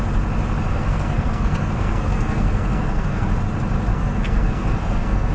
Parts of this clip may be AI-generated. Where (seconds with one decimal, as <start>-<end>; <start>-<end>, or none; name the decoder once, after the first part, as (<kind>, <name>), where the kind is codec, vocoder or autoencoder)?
0.7-3.3 (codec, SNAC); 3.9-5.3